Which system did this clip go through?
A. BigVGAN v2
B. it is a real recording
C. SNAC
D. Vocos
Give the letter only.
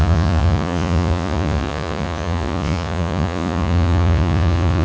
D